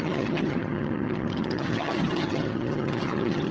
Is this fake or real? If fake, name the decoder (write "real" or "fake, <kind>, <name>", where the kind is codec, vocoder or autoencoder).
fake, vocoder, HiFi-GAN